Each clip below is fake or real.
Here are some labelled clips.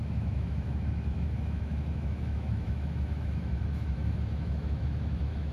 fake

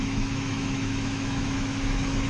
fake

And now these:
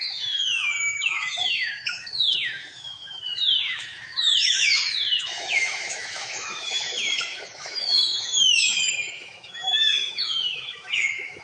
fake